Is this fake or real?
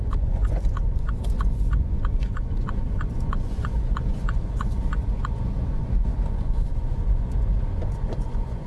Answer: fake